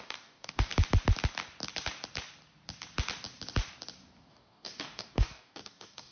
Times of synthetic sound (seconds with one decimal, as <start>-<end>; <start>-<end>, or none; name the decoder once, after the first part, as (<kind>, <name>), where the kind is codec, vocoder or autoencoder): 0.0-0.7 (codec, DAC); 4.3-6.1

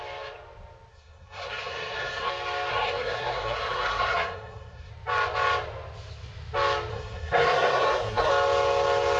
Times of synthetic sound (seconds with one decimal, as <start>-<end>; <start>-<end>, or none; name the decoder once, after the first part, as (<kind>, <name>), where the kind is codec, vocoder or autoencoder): 0.9-2.3 (codec, SNAC); 2.7-4.9; 6.9-8.3

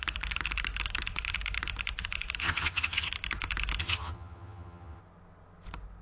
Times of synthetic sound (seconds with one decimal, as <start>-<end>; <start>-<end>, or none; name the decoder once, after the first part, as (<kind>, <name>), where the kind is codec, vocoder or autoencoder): 2.4-3.1 (vocoder, HiFi-GAN); 3.8-5.0

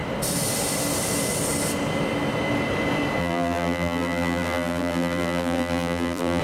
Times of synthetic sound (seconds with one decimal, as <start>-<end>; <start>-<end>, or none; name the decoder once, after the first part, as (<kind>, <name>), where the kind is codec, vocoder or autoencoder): 3.2-6.4 (vocoder, BigVGAN v2)

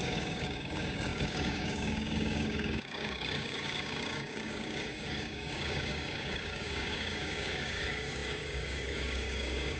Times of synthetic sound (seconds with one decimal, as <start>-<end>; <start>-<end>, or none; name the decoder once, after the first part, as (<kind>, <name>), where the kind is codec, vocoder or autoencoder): 0.0-9.8 (codec, DAC)

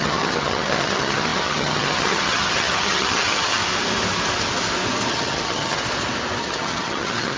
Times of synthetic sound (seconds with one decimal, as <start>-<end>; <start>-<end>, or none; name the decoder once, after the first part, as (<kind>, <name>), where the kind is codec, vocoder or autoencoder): 0.0-3.6 (vocoder, HiFi-GAN); 5.1-5.8; 6.4-7.4

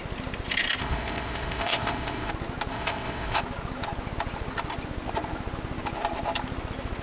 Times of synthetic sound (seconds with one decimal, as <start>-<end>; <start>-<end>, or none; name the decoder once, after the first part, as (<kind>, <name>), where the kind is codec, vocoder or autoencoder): 0.8-2.3 (codec, ZipCodec); 2.7-3.4

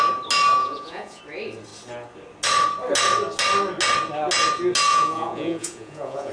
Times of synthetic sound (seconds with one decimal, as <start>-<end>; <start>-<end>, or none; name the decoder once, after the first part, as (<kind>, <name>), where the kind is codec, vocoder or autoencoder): 0.6-1.2 (vocoder, Vocos); 4.9-6.3